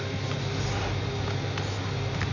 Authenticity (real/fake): real